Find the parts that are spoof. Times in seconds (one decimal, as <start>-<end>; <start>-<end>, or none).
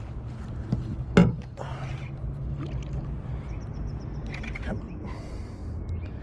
none